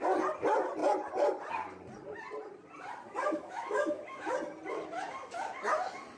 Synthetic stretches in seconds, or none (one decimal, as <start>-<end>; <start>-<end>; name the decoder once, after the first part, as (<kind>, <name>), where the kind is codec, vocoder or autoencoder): 3.2-4.3 (autoencoder, DAC-VAE)